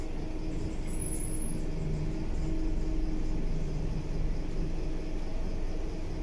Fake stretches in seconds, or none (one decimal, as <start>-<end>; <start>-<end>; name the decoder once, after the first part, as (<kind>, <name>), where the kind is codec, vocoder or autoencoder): none